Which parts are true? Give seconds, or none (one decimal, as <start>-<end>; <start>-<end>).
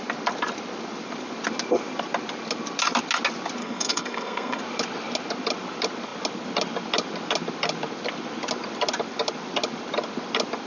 0.0-3.6; 4.6-10.7